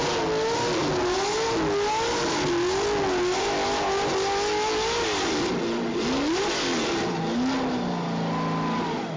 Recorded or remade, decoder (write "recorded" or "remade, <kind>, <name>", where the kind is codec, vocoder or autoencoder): recorded